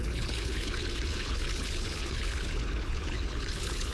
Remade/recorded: remade